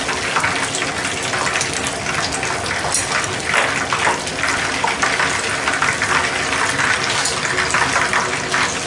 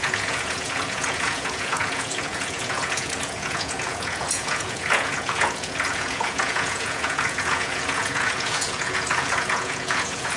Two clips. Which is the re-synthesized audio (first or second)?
second